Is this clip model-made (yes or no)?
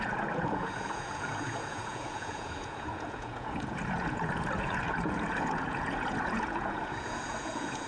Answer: yes